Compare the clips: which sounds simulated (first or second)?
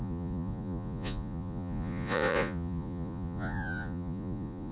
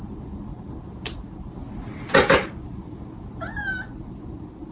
first